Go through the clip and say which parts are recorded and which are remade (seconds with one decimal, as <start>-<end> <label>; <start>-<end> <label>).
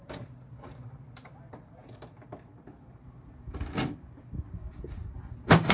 0.0-5.7 remade